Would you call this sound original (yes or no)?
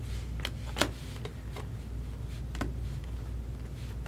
yes